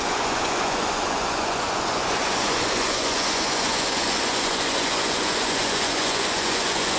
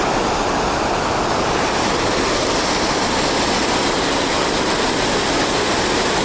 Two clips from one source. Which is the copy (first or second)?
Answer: first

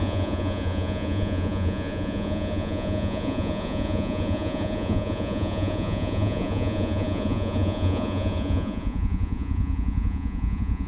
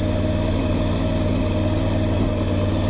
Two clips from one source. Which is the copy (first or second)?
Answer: first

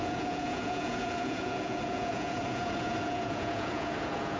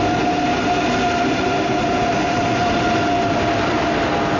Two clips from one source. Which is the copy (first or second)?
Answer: first